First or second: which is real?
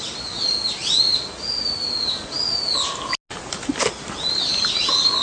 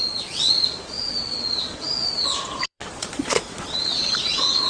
first